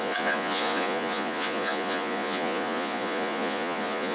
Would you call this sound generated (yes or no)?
yes